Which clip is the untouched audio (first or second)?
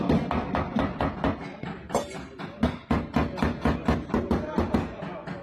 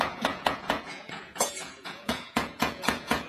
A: first